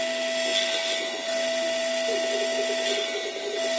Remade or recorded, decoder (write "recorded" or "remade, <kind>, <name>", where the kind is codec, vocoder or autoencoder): recorded